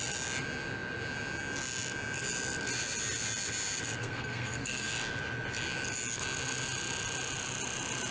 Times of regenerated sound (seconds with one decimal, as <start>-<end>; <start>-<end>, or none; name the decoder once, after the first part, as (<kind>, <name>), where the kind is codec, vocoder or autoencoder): 4.0-4.9 (codec, SNAC)